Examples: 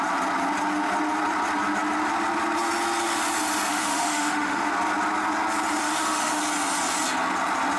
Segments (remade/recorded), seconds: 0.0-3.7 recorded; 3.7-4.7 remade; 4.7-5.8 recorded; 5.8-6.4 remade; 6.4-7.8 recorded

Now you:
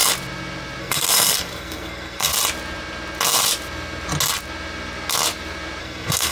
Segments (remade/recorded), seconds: 0.0-0.8 recorded; 0.8-2.3 remade; 2.3-5.8 recorded; 5.8-6.3 remade

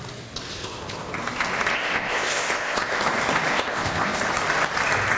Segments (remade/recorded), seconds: 0.0-0.5 recorded; 0.5-1.2 remade; 1.2-1.7 recorded; 1.7-3.0 remade; 3.0-3.5 recorded; 3.5-4.2 remade; 4.2-5.2 recorded